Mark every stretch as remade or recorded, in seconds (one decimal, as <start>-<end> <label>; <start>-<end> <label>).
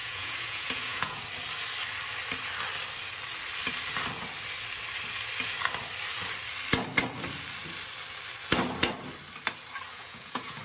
0.0-1.2 remade; 1.2-9.9 recorded; 9.9-10.6 remade